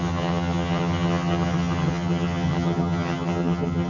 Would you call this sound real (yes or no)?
no